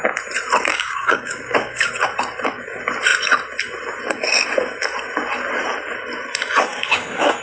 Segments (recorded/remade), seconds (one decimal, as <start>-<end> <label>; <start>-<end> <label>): 0.0-0.7 recorded; 0.7-1.9 remade; 1.9-6.7 recorded; 6.7-7.4 remade